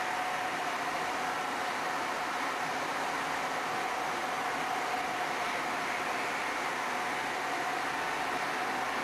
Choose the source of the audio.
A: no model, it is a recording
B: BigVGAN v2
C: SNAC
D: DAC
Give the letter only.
A